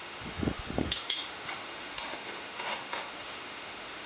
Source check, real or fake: fake